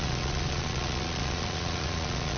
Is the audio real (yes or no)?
no